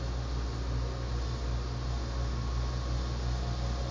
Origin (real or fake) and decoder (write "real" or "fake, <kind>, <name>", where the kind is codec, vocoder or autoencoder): real